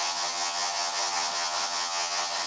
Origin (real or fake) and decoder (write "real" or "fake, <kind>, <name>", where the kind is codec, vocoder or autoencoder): fake, vocoder, HiFi-GAN